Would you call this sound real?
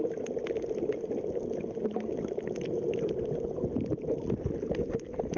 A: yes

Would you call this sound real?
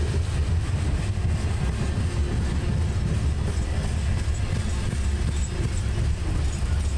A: yes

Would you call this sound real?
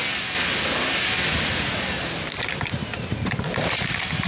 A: yes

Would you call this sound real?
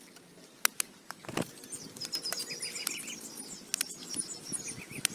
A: yes